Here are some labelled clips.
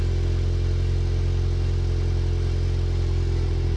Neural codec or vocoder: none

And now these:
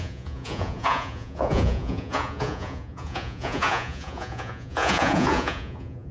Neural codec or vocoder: vocoder, Vocos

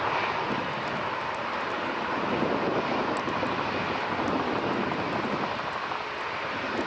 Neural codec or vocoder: none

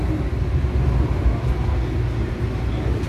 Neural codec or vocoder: none